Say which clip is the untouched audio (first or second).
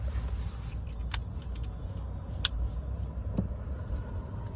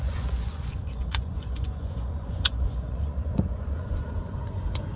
first